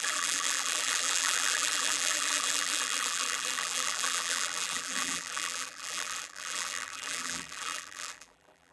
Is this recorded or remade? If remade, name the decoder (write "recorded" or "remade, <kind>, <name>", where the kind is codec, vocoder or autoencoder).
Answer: remade, vocoder, BigVGAN v2